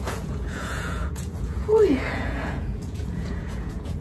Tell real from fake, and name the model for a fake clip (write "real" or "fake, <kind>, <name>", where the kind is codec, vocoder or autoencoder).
fake, vocoder, Vocos